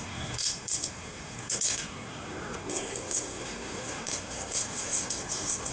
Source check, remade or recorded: remade